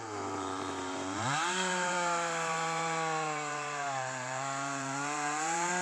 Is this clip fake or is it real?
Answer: fake